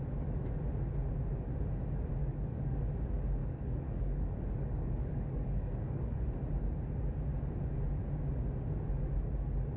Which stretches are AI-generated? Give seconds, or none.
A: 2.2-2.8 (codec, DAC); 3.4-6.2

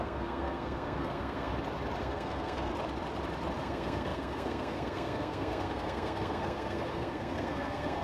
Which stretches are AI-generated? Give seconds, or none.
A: 0.0-1.5 (codec, SNAC); 2.0-2.7; 3.6-8.0

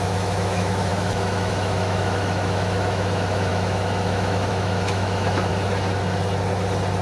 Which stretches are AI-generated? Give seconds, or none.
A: 0.0-5.5 (autoencoder, DAC-VAE)

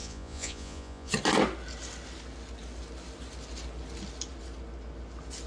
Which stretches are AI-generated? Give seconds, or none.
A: 0.0-1.1 (vocoder, Vocos)

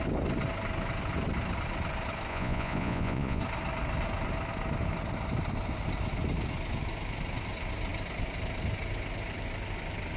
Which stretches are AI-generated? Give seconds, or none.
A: 2.3-3.4 (vocoder, Vocos)

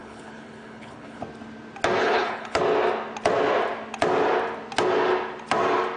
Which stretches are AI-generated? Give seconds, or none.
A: 0.0-1.2 (codec, HILCodec); 2.0-2.6

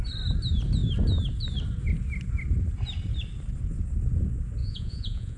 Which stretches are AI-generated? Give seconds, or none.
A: 4.6-5.4 (vocoder, Vocos)